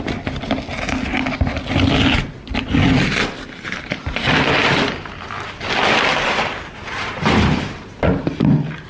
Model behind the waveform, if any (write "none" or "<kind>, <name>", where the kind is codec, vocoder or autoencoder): none